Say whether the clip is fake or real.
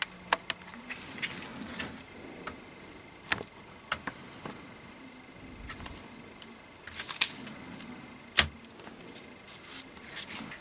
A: real